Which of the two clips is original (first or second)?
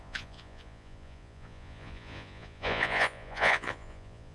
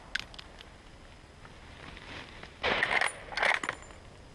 second